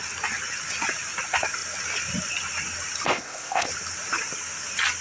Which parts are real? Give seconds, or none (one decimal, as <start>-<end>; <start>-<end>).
0.0-3.1; 3.7-5.0